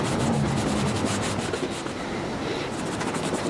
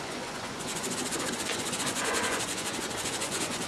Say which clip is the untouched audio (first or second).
first